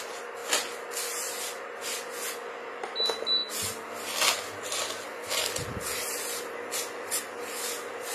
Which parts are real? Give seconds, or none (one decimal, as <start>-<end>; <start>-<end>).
0.0-8.1